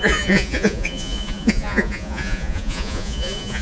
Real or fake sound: fake